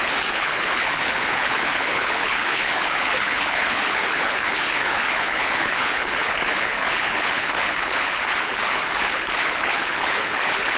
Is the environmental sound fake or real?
fake